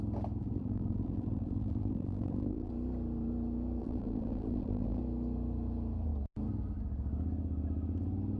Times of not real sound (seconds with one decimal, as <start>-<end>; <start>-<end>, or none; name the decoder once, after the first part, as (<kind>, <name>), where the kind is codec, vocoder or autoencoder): 0.4-2.7 (vocoder, BigVGAN v2); 3.8-5.0

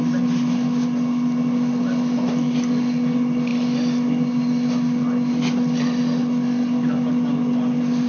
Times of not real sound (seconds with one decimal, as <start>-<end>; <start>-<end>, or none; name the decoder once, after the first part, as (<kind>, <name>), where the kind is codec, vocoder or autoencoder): none

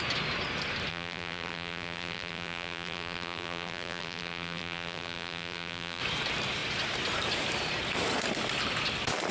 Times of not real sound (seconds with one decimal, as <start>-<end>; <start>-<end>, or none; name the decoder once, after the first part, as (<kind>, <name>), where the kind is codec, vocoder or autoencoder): 0.9-6.0 (vocoder, BigVGAN v2)

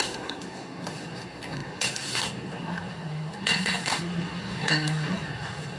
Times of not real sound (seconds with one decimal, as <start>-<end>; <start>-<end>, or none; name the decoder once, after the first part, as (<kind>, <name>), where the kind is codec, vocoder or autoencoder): 0.0-5.8 (codec, SNAC)

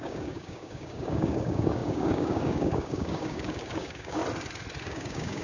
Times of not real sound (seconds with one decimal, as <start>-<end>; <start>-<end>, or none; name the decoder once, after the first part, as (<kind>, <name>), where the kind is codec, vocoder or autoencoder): 0.0-4.2 (codec, DAC); 4.8-5.4

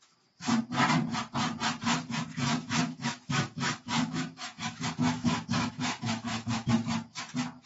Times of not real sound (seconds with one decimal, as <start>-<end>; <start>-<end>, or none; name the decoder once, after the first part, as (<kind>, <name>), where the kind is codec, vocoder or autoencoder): 2.3-6.7 (autoencoder, DAC-VAE)

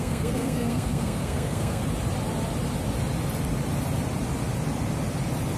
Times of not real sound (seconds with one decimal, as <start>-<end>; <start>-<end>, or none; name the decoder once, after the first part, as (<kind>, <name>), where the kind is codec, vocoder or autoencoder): 0.0-1.8 (codec, SNAC)

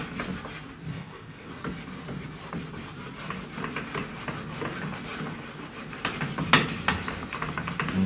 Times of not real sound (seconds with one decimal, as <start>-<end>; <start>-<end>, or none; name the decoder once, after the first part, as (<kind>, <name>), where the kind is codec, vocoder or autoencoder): 0.9-1.5 (codec, ZipCodec)